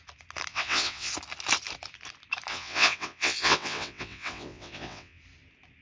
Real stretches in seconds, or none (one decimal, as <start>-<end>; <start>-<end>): 0.0-0.5; 1.1-2.5; 5.2-5.8